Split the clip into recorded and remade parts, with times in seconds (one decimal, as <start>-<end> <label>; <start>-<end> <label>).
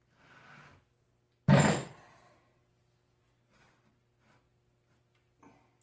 0.0-5.8 recorded